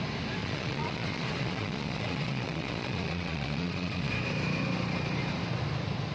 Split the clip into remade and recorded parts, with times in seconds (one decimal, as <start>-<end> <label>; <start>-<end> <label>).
0.0-0.4 recorded; 0.4-4.1 remade; 4.1-6.1 recorded